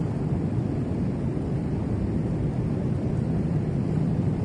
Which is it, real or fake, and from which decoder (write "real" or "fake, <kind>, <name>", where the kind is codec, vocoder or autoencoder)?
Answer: real